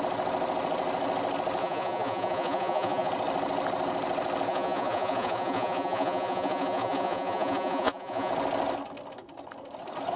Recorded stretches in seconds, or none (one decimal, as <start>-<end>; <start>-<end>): 0.0-1.6; 3.1-4.5; 8.3-10.2